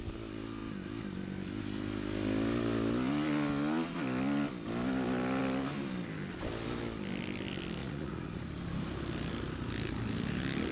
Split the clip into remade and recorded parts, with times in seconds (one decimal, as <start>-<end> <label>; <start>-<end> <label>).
0.0-7.8 recorded; 7.8-8.4 remade; 8.4-10.7 recorded